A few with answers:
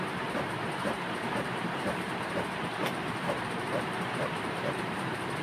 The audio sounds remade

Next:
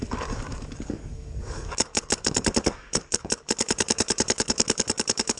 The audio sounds remade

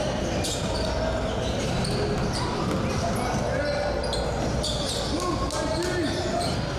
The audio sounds recorded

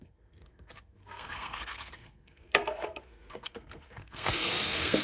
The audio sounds remade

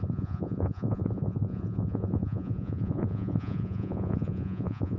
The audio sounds remade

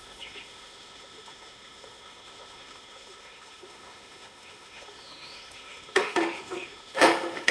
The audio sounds remade